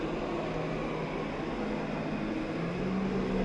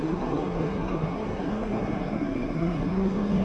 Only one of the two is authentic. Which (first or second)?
first